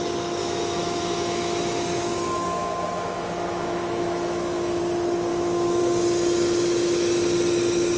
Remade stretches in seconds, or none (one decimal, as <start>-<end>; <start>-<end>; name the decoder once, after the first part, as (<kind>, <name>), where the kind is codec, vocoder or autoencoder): 0.4-4.8 (autoencoder, DAC-VAE); 5.3-5.8